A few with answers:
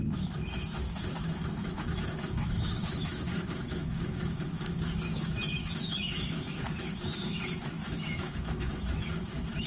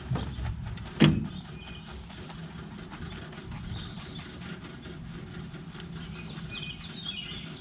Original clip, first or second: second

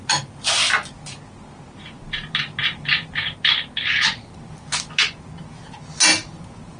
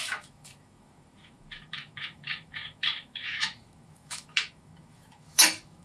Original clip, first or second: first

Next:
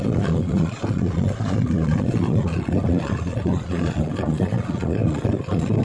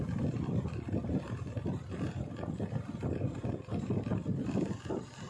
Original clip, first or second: second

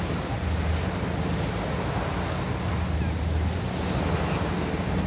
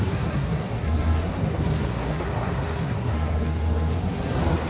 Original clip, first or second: first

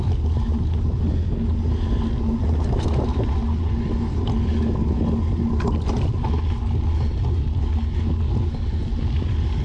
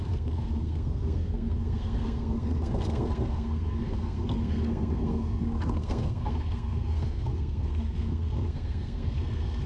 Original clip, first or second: first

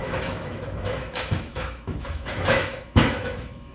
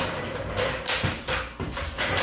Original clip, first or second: second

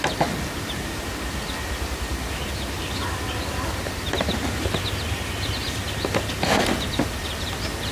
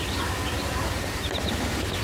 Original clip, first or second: first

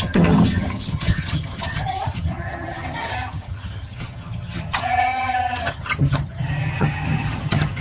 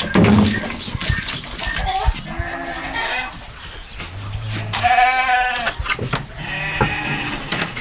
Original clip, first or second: second